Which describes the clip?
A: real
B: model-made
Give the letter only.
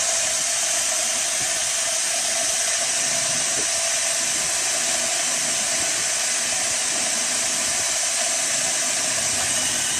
A